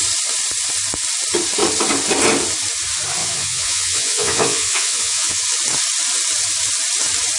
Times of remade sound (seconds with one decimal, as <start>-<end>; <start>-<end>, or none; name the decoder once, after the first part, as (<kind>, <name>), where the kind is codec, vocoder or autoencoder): 3.2-5.4 (vocoder, Vocos)